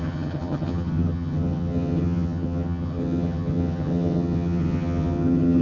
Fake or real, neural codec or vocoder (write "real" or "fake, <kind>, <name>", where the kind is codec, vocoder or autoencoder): fake, vocoder, HiFi-GAN